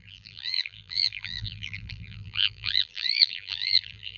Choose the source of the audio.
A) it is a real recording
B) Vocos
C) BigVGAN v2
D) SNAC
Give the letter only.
C